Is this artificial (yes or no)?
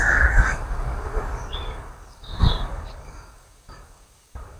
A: yes